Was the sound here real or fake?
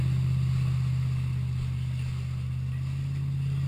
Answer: real